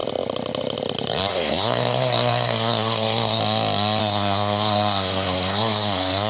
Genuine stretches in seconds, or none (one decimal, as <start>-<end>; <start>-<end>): 0.0-1.3; 3.4-4.0